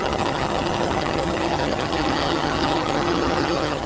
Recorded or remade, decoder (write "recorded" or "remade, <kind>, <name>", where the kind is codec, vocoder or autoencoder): remade, vocoder, HiFi-GAN